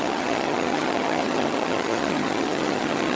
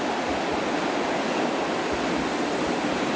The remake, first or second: first